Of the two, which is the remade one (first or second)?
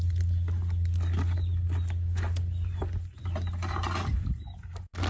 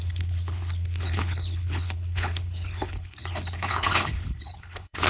second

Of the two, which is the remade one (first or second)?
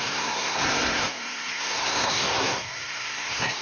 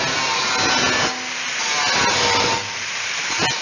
first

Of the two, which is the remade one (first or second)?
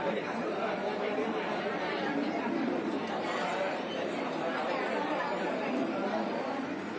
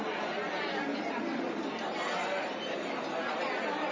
first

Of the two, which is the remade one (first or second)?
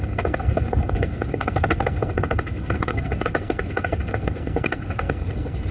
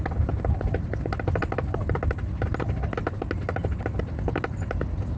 first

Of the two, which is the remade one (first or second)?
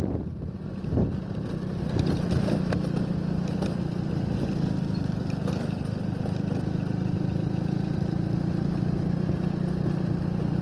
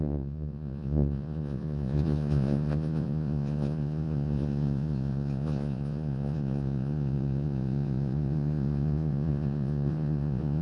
second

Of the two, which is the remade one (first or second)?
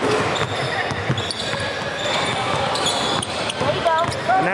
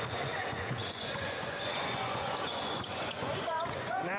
second